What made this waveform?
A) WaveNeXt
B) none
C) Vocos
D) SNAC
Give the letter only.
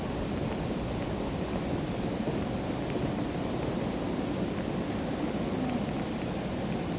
B